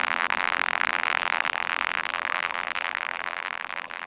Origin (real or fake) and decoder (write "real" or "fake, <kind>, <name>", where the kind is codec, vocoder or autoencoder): fake, vocoder, BigVGAN v2